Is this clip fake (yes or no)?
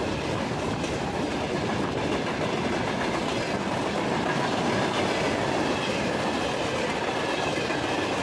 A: no